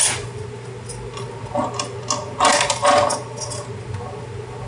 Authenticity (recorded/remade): recorded